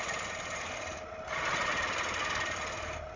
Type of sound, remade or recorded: recorded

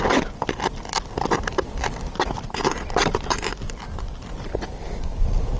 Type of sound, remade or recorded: remade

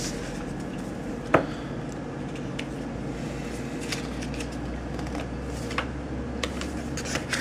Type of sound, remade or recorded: recorded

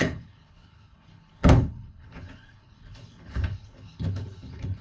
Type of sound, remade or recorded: remade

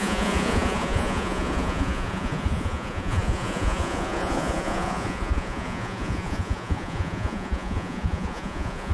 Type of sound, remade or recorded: remade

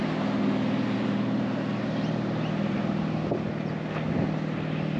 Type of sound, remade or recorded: recorded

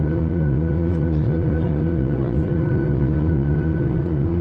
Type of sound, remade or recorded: remade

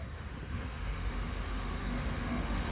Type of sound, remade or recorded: remade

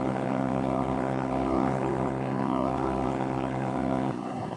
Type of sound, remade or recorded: remade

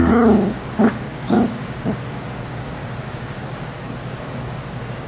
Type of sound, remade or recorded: remade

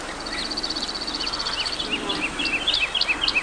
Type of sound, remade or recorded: recorded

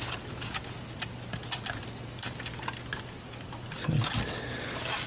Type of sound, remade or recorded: recorded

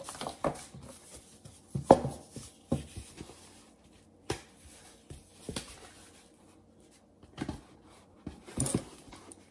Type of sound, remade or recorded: recorded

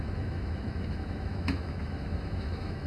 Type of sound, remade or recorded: remade